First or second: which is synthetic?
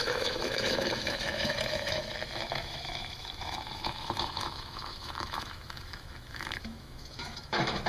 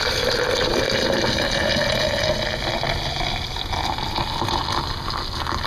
first